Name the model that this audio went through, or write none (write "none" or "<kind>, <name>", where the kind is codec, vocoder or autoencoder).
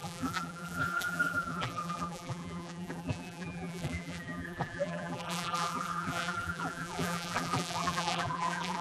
vocoder, BigVGAN v2